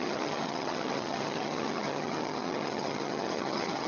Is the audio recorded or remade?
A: remade